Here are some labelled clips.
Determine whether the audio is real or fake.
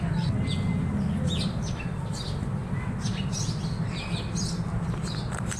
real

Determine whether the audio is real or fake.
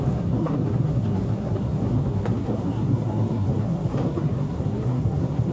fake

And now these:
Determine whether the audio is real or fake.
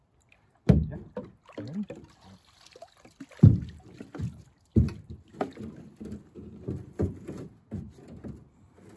real